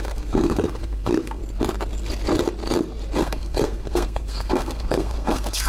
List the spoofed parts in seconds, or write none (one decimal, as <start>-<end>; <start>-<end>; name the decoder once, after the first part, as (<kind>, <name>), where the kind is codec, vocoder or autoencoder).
0.0-1.4 (codec, SNAC); 3.2-5.7